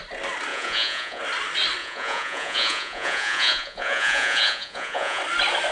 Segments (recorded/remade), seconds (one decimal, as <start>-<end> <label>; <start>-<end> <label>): 0.0-0.5 recorded; 0.5-1.2 remade; 1.2-1.8 recorded; 1.8-5.2 remade; 5.2-5.7 recorded